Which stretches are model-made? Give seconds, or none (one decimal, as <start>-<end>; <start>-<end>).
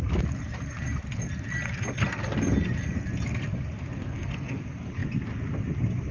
4.0-4.6